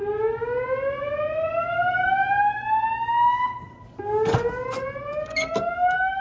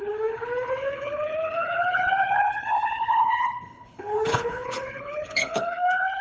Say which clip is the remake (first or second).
second